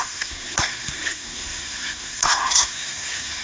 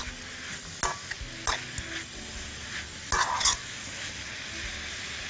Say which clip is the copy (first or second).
first